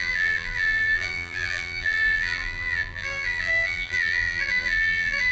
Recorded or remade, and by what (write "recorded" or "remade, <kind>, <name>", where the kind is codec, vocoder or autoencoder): remade, vocoder, BigVGAN v2